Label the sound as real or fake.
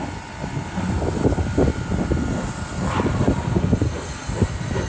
real